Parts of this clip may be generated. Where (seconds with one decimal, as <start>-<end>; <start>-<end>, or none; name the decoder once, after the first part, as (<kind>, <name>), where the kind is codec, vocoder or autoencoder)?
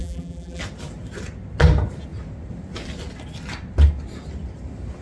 0.0-0.6 (vocoder, BigVGAN v2)